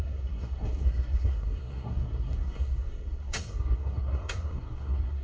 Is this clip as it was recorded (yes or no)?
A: no